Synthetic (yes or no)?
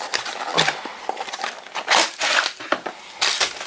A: no